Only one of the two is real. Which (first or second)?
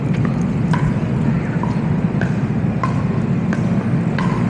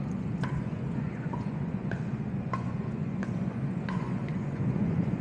first